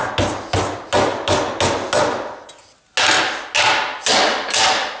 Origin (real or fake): real